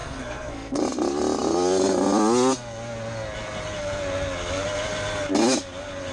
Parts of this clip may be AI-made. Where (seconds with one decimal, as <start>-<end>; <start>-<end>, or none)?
0.0-0.8